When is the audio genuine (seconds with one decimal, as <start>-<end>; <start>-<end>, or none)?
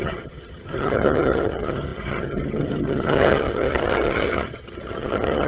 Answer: none